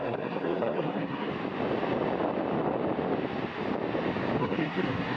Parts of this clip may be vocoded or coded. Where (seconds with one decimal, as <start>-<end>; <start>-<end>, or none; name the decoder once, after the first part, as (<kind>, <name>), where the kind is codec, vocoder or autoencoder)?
0.0-1.3 (codec, SNAC); 4.4-5.2